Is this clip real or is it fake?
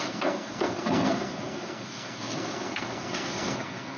fake